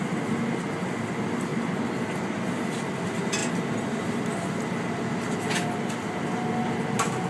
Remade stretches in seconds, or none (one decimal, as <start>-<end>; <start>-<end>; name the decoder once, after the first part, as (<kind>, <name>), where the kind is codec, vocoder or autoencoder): none